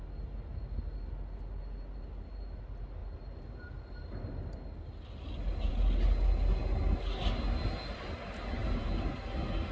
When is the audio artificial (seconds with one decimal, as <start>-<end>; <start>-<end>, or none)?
8.6-9.1

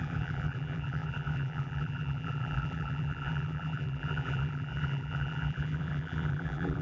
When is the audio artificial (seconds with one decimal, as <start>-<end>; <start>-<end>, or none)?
0.0-6.8

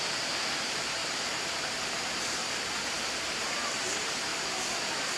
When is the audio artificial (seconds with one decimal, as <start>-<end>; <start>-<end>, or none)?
0.0-2.4; 3.2-5.2

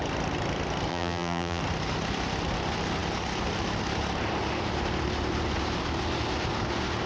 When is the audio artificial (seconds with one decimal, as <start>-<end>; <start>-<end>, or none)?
0.9-1.6

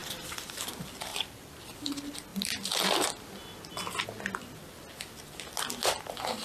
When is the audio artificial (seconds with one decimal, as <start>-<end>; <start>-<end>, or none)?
0.0-0.7; 1.1-1.6

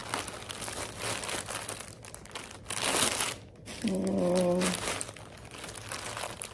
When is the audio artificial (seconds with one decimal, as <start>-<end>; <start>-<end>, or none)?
none